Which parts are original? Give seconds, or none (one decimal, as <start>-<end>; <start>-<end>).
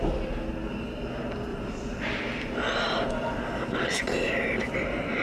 0.0-1.5; 2.2-5.2